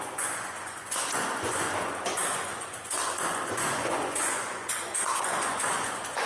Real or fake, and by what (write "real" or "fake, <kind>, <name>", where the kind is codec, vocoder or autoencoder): fake, vocoder, Vocos